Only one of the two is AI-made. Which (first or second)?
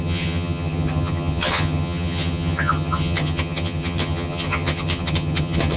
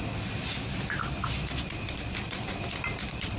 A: first